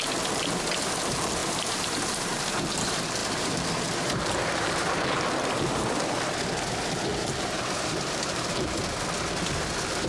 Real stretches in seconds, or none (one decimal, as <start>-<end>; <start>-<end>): 0.0-1.4; 2.7-3.2; 6.2-7.1; 8.8-10.1